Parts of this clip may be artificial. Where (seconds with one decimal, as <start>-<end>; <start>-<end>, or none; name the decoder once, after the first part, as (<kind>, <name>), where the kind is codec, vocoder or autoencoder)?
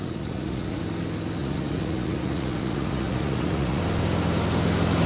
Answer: 0.0-0.8 (vocoder, Vocos); 1.4-3.8